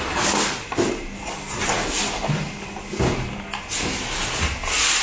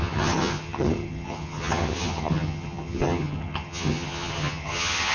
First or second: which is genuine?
first